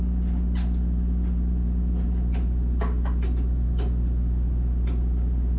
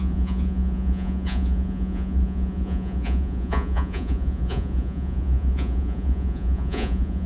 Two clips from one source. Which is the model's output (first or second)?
second